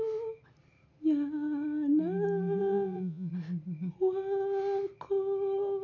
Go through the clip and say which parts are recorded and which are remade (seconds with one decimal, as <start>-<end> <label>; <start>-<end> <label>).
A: 0.0-2.6 recorded; 2.6-3.3 remade; 3.3-5.8 recorded